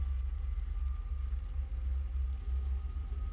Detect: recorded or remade recorded